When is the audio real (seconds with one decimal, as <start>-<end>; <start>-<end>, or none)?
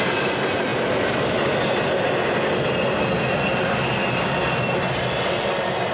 0.0-5.9